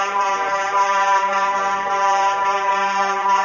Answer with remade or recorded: remade